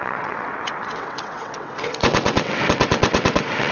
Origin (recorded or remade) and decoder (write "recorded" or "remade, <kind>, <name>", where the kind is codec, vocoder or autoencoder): remade, vocoder, WaveNeXt